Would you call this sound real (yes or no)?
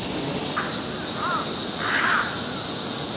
yes